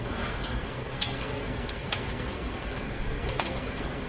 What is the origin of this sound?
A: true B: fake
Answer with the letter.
B